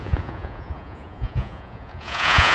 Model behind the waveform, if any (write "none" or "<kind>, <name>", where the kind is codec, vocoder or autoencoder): vocoder, Vocos